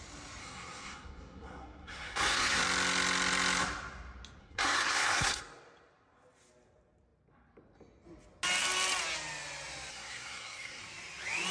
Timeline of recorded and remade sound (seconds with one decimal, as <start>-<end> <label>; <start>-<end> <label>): 0.0-0.4 recorded; 0.4-2.6 remade; 2.6-4.4 recorded; 4.4-5.4 remade; 5.4-9.9 recorded; 9.9-10.8 remade; 10.8-11.5 recorded